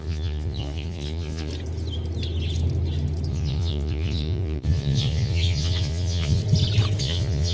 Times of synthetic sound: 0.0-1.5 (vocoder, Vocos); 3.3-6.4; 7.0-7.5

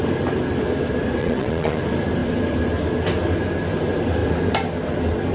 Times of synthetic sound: 1.2-1.8 (vocoder, Vocos)

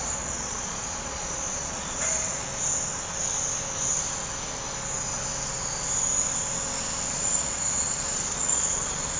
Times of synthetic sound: 0.0-2.5 (vocoder, Vocos); 7.1-9.2

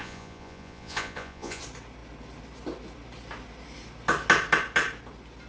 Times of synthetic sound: 0.0-1.6 (vocoder, Vocos)

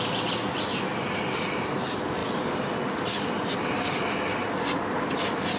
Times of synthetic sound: none

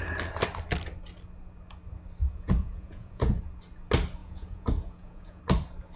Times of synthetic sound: 2.2-3.4 (vocoder, Vocos); 4.2-5.4